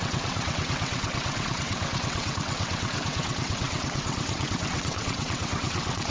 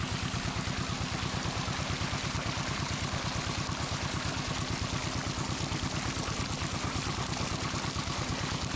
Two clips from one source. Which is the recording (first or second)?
second